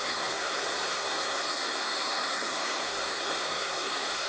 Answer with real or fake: fake